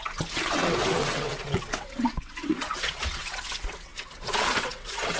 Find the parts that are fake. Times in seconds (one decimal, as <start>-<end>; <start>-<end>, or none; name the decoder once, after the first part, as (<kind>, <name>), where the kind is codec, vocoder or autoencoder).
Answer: 0.0-5.2 (vocoder, WaveNeXt)